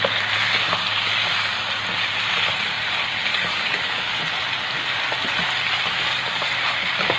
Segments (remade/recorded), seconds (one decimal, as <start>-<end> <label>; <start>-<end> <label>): 0.0-3.3 recorded; 3.3-4.2 remade; 4.2-7.2 recorded